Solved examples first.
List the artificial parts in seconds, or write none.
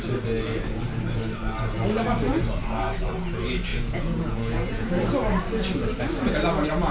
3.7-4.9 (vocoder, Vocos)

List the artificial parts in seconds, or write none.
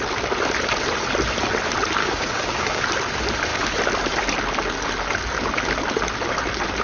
2.0-2.8 (codec, DAC)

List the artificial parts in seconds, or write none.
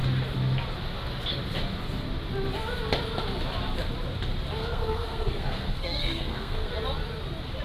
4.6-6.7 (codec, SNAC)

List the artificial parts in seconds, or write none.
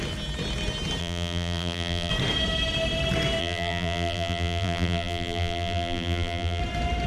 1.0-2.1 (vocoder, BigVGAN v2); 3.4-6.6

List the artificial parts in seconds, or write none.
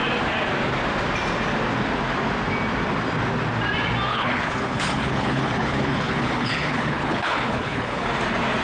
4.1-8.1 (codec, HILCodec)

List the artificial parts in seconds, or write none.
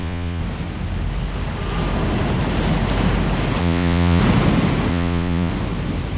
0.0-0.4 (vocoder, Vocos); 3.6-4.2; 4.9-5.5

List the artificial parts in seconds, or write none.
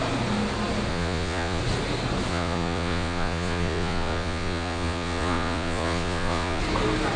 0.9-1.6 (vocoder, Vocos); 2.3-6.6